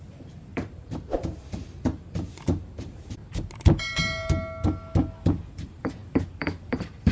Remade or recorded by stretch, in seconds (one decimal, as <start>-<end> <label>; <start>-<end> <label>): 0.0-3.2 remade; 3.2-5.2 recorded; 5.2-7.1 remade

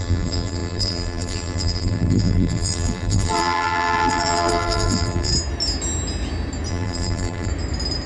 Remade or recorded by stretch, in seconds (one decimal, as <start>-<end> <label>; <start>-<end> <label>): 0.0-5.3 remade; 5.3-6.7 recorded; 6.7-7.5 remade; 7.5-8.1 recorded

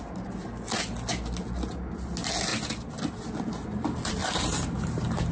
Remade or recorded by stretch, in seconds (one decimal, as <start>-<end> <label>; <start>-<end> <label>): 0.0-2.5 recorded; 2.5-3.2 remade; 3.2-4.2 recorded; 4.2-5.3 remade

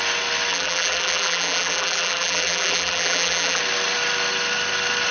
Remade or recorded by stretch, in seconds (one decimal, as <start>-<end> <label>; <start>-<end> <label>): 0.0-0.5 recorded; 0.5-3.6 remade; 3.6-5.1 recorded